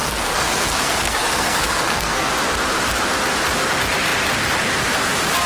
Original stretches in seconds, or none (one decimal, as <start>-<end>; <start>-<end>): 2.3-5.5